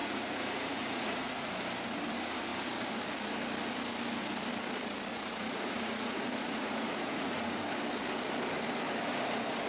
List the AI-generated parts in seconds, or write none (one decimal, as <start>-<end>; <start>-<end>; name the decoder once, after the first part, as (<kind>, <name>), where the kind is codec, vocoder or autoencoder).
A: 0.0-1.5 (vocoder, Vocos); 5.1-7.6

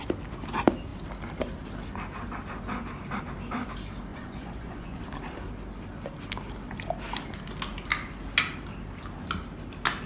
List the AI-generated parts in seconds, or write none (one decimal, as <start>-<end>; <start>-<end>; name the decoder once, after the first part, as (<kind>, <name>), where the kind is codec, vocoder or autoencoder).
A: 4.1-5.0 (vocoder, Vocos)

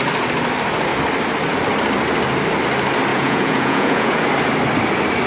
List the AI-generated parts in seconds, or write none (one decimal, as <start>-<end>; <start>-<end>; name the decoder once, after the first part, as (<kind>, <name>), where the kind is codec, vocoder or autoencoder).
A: 3.1-4.2 (vocoder, Vocos)

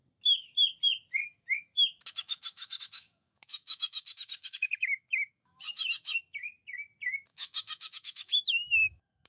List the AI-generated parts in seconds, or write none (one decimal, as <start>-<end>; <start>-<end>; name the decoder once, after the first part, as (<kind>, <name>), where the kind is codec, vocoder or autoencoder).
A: 1.2-6.2 (autoencoder, DAC-VAE); 7.3-9.3

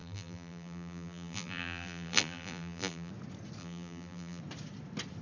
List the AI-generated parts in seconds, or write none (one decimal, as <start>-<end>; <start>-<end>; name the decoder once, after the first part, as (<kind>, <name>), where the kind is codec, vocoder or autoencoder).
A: 0.0-3.1 (vocoder, BigVGAN v2); 3.6-4.4